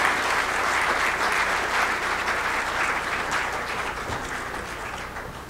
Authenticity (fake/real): real